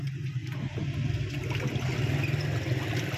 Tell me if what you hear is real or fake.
real